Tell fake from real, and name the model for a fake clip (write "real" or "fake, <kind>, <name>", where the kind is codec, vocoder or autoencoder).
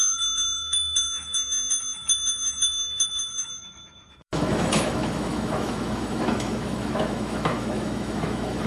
fake, autoencoder, DAC-VAE